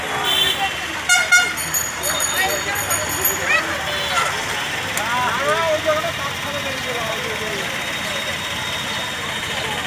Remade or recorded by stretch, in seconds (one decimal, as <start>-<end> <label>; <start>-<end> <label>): 0.0-9.9 recorded